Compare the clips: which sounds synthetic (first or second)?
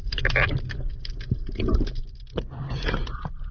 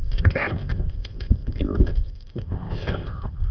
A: second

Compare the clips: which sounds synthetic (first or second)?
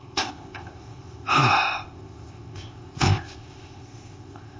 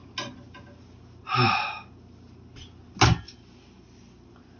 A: first